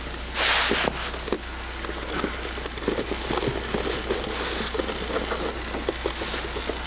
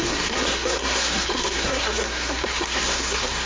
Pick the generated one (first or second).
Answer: second